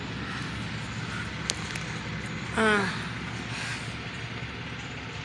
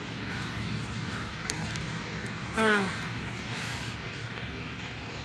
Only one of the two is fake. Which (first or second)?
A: second